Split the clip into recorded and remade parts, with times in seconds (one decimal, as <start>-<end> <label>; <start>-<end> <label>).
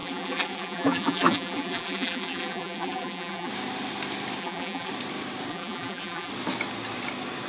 0.0-3.5 remade; 3.5-4.4 recorded; 4.4-4.9 remade; 4.9-5.5 recorded; 5.5-6.3 remade; 6.3-7.5 recorded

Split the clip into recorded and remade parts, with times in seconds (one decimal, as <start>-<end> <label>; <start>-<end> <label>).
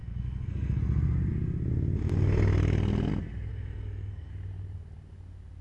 0.0-0.8 remade; 0.8-3.5 recorded; 3.5-4.3 remade; 4.3-5.6 recorded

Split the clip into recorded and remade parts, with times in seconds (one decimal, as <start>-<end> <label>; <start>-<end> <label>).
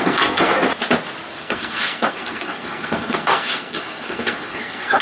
0.0-0.5 remade; 0.5-1.4 recorded; 1.4-5.0 remade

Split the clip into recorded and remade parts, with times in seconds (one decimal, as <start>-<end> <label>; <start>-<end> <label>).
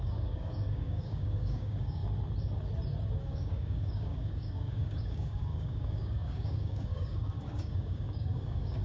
0.0-2.0 remade; 2.0-3.2 recorded; 3.2-8.8 remade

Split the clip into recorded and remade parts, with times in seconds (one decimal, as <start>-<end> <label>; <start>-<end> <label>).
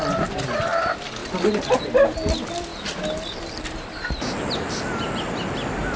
0.0-6.0 recorded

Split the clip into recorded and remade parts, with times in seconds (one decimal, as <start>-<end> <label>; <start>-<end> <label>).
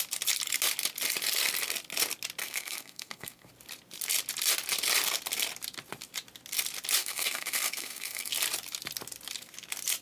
0.0-2.4 recorded; 2.4-3.5 remade; 3.5-7.0 recorded; 7.0-8.3 remade; 8.3-10.0 recorded